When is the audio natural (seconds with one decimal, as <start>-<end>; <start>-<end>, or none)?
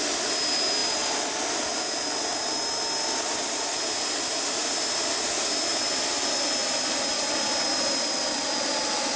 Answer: 0.0-9.2